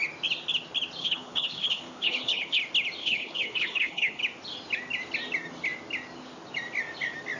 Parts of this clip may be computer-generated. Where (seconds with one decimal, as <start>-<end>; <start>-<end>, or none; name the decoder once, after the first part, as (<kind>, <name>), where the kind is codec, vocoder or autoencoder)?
1.0-2.6 (codec, HILCodec); 3.0-4.2